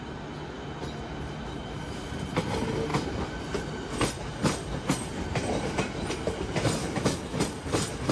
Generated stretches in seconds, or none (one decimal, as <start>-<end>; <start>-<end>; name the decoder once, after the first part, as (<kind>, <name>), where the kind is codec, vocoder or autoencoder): 6.8-7.4 (autoencoder, DAC-VAE)